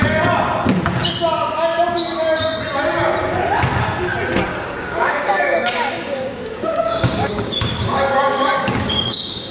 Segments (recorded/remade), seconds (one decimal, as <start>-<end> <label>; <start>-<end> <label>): 0.0-4.5 recorded; 4.5-9.5 remade